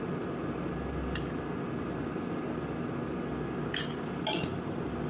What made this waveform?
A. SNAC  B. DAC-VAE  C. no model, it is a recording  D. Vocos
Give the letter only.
C